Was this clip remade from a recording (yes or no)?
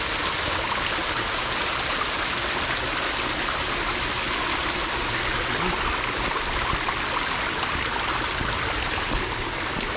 no